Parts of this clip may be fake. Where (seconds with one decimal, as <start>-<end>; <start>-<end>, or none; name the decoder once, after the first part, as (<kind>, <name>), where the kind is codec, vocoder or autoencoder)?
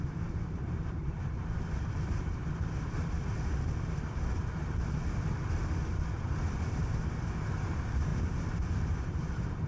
0.0-2.4 (vocoder, BigVGAN v2); 6.6-9.7